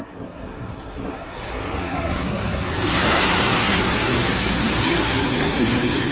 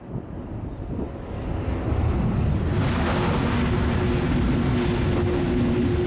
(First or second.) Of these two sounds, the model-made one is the first